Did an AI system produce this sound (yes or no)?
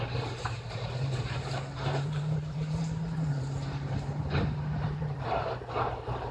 yes